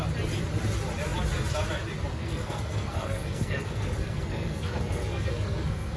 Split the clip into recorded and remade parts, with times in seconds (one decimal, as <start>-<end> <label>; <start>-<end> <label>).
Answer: 0.0-2.1 recorded; 2.1-6.0 remade